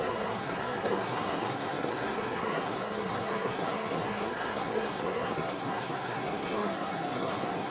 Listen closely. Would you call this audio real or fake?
fake